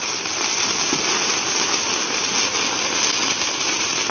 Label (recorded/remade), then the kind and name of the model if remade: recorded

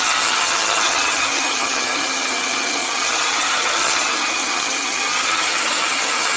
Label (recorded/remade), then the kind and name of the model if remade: remade, vocoder, HiFi-GAN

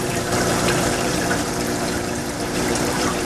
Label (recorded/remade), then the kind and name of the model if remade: remade, vocoder, BigVGAN v2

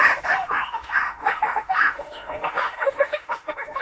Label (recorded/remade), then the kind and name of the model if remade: remade, autoencoder, DAC-VAE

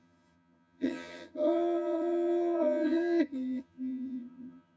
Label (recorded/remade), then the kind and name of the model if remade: remade, vocoder, HiFi-GAN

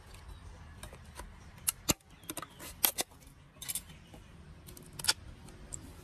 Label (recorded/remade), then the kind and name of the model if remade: recorded